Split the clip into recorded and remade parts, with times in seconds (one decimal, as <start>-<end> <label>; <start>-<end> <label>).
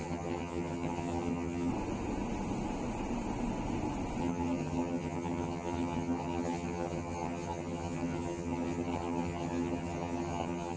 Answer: 0.0-1.7 remade; 1.7-4.2 recorded; 4.2-10.8 remade